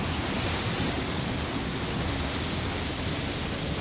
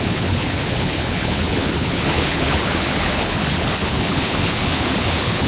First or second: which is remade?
second